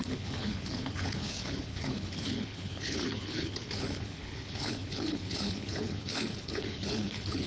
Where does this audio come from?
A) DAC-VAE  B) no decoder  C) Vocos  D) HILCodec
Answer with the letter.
D